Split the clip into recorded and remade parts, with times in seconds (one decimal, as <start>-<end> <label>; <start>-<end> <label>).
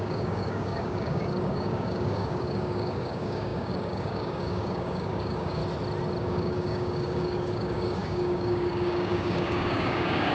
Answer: 0.0-5.6 remade; 5.6-6.2 recorded; 6.2-10.3 remade